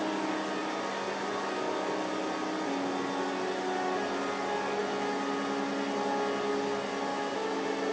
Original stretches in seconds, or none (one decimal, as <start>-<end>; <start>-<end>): 0.0-7.9